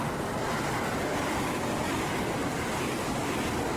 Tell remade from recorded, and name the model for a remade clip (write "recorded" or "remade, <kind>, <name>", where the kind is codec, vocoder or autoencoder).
recorded